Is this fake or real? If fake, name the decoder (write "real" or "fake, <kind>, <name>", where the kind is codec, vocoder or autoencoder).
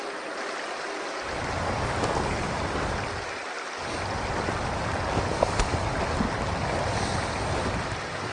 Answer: real